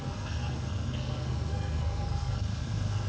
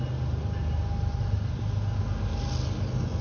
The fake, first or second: first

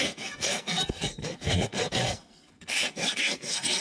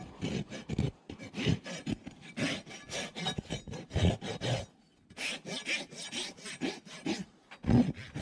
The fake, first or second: first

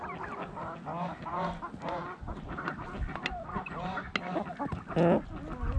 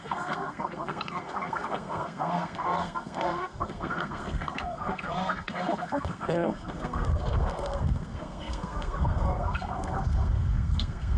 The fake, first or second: second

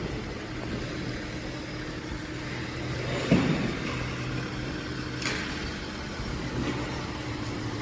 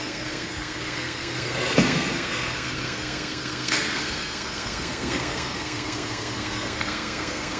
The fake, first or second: second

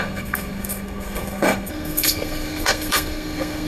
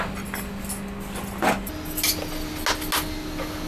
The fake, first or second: first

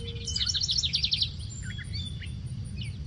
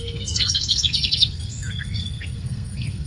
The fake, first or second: second